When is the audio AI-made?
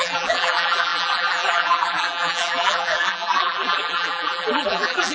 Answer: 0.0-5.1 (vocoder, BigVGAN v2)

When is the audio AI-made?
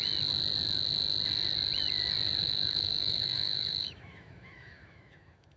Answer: 2.4-5.6 (autoencoder, DAC-VAE)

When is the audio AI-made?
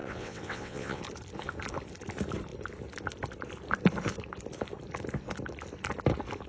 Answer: 0.0-1.0 (vocoder, WaveNeXt)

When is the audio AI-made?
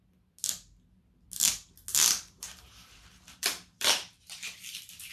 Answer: 1.9-5.1 (vocoder, BigVGAN v2)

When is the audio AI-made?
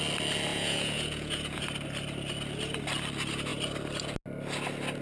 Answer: 0.5-1.6 (vocoder, Vocos)